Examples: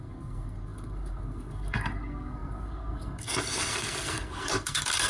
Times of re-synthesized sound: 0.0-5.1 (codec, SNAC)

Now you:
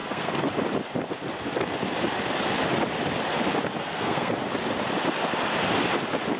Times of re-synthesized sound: 0.0-0.5 (codec, SNAC); 3.8-4.3